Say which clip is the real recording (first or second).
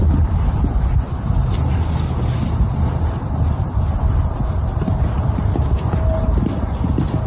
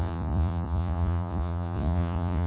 first